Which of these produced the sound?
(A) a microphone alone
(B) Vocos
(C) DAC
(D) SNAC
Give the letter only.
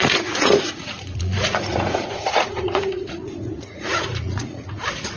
B